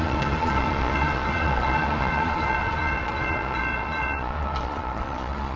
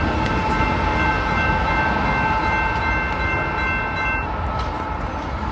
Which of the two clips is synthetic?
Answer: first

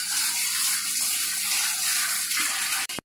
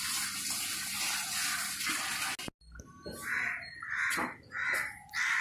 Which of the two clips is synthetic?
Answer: first